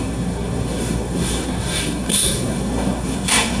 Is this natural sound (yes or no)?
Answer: no